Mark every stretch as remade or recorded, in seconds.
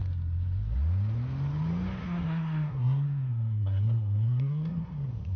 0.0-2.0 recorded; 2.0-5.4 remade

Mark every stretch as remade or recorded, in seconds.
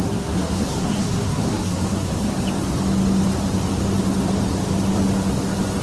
0.0-2.3 remade; 2.3-5.8 recorded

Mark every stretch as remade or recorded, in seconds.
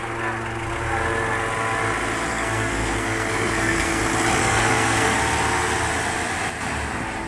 0.0-2.3 recorded; 2.3-4.0 remade; 4.0-4.4 recorded; 4.4-5.2 remade; 5.2-7.3 recorded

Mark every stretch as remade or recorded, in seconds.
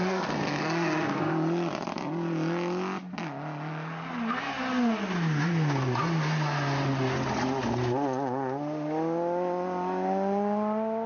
0.0-1.3 remade; 1.3-11.1 recorded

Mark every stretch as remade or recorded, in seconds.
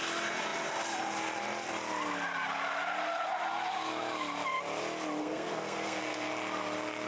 0.0-5.2 recorded; 5.2-6.3 remade; 6.3-7.1 recorded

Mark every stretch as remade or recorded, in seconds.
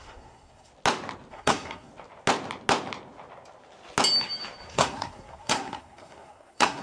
0.0-0.7 remade; 0.7-1.3 recorded; 1.3-1.9 remade; 1.9-4.7 recorded; 4.7-6.8 remade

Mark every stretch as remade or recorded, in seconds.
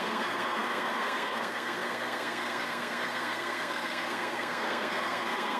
0.0-5.6 remade